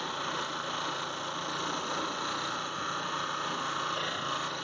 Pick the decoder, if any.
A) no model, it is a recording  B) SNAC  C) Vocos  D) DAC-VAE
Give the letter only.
A